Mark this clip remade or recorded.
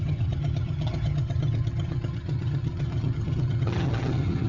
remade